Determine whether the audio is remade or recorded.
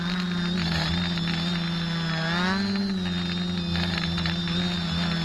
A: recorded